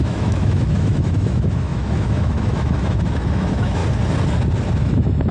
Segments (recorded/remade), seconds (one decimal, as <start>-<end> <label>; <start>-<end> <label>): 0.0-3.8 remade; 3.8-4.8 recorded; 4.8-5.3 remade